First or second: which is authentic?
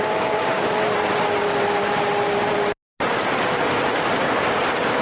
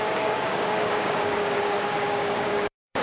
first